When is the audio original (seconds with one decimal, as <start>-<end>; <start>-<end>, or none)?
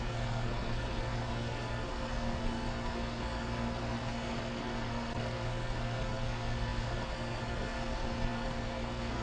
none